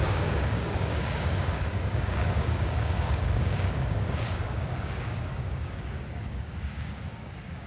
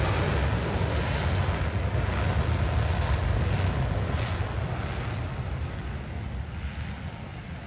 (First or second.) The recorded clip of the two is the second